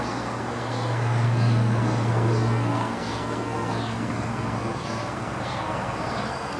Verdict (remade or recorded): remade